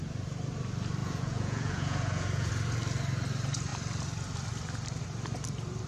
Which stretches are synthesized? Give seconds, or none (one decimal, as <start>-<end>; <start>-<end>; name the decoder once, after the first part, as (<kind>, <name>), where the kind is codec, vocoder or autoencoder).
1.0-2.5 (vocoder, Vocos)